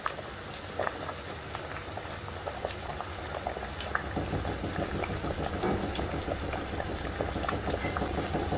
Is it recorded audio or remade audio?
recorded